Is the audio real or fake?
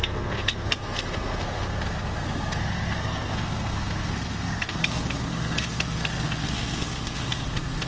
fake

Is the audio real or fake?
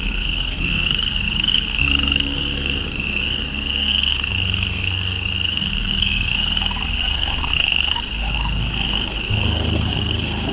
fake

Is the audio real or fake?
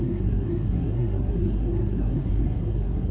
fake